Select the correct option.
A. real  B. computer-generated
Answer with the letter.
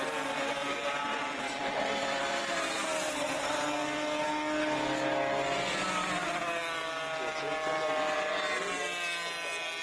A